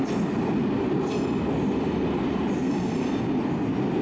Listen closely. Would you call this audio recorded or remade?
recorded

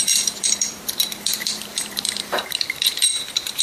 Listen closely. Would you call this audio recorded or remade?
remade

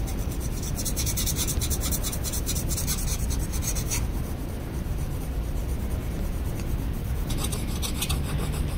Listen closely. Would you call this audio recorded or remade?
remade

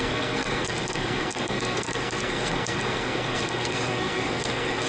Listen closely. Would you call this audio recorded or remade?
remade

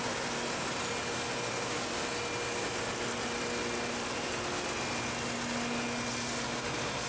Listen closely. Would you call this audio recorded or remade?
recorded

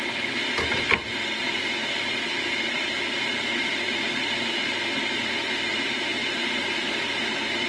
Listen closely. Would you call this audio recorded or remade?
recorded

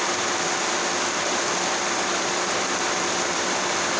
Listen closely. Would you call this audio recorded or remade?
remade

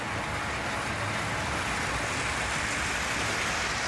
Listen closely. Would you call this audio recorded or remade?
recorded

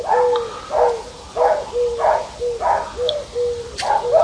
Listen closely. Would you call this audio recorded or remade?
recorded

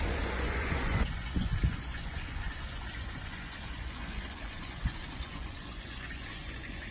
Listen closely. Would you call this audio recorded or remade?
remade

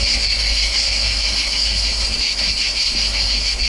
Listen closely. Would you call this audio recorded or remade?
remade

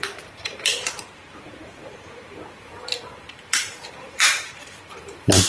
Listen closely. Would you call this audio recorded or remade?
remade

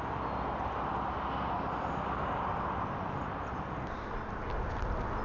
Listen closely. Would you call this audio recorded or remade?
recorded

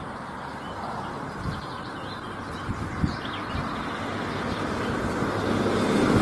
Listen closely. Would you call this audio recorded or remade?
recorded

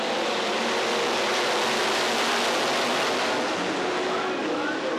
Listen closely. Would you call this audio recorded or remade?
recorded